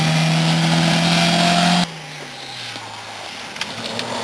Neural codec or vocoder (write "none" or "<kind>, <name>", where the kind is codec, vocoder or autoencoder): none